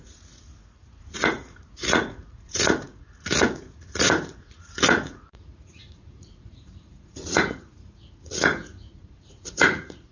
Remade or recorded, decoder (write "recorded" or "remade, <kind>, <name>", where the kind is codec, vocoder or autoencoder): remade, vocoder, Vocos